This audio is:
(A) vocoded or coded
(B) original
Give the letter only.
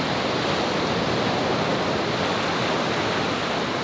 B